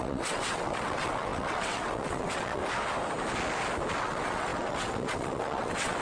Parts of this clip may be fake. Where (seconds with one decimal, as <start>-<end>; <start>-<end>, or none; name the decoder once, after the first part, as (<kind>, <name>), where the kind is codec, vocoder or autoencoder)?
0.0-2.6 (vocoder, WaveNeXt); 4.0-6.0